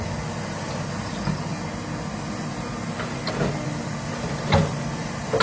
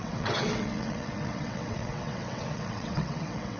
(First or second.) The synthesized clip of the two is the second